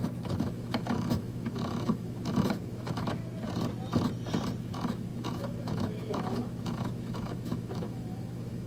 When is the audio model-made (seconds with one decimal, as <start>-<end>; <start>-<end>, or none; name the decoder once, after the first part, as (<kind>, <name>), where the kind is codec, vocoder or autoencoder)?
0.0-3.2 (autoencoder, DAC-VAE); 4.6-8.7